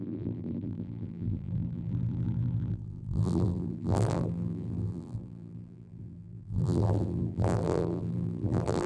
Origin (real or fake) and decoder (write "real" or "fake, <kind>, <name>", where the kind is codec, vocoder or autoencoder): fake, vocoder, BigVGAN v2